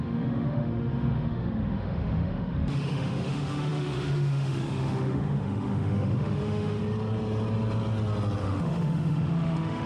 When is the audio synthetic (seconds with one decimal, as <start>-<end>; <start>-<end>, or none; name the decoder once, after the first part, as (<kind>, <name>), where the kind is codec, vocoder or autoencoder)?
0.0-6.8 (autoencoder, DAC-VAE); 8.4-9.9